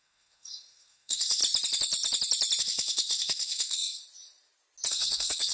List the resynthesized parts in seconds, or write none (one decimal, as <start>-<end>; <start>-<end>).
0.0-1.4; 2.6-4.0; 4.9-5.5